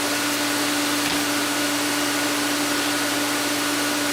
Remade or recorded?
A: remade